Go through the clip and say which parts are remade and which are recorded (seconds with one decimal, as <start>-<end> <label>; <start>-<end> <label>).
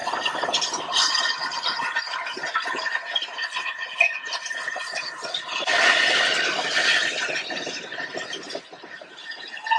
0.0-1.1 remade; 1.1-3.3 recorded; 3.3-7.2 remade; 7.2-9.8 recorded